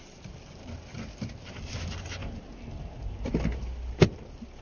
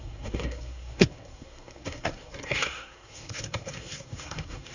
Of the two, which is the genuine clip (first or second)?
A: first